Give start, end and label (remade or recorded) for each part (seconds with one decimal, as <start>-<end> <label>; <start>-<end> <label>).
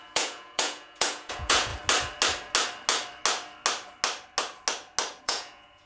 0.0-1.7 remade; 1.7-5.2 recorded; 5.2-5.9 remade